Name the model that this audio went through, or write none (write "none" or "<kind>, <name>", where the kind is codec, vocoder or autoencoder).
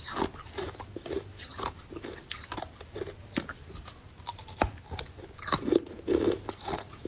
none